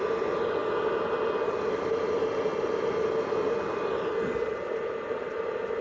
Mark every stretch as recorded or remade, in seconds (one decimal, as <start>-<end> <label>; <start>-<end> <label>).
0.0-5.8 recorded